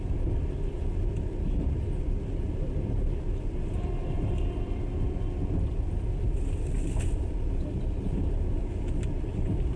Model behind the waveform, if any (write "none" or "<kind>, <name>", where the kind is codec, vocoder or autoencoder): none